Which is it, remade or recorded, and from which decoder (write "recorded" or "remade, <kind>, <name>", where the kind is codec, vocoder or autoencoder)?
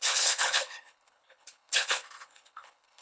remade, codec, HILCodec